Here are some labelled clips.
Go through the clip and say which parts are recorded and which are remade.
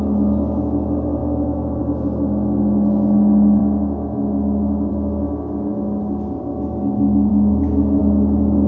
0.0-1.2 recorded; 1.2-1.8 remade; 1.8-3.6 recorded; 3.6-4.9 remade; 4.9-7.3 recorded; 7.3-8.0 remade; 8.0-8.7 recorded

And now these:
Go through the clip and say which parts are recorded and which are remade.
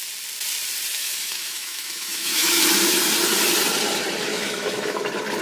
0.0-0.9 recorded; 0.9-2.6 remade; 2.6-4.3 recorded; 4.3-5.0 remade; 5.0-5.4 recorded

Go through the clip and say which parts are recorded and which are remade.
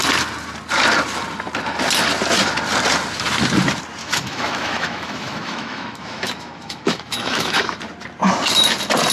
0.0-4.0 recorded; 4.0-7.6 remade; 7.6-9.1 recorded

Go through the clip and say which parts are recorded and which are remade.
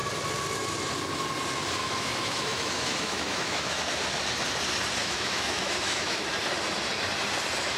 0.0-1.8 recorded; 1.8-3.8 remade; 3.8-5.0 recorded; 5.0-6.3 remade; 6.3-7.8 recorded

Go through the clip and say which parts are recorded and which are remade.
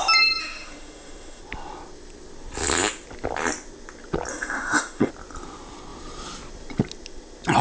0.0-0.4 recorded; 0.4-1.4 remade; 1.4-4.3 recorded; 4.3-5.1 remade; 5.1-7.6 recorded